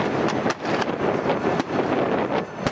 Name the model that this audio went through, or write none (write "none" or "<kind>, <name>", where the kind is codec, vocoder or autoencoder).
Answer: none